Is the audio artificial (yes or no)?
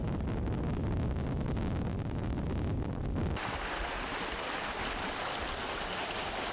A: no